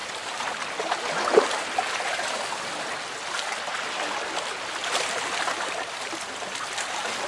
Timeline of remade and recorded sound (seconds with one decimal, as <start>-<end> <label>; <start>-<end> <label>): 0.0-7.3 recorded